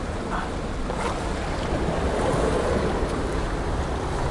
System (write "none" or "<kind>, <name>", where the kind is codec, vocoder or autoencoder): none